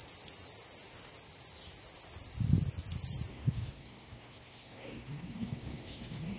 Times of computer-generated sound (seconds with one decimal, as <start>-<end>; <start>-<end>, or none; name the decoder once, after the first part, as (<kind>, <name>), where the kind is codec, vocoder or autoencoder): 3.3-6.4 (codec, SNAC)